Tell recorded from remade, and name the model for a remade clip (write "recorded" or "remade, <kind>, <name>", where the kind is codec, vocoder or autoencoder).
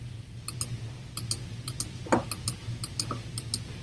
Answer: recorded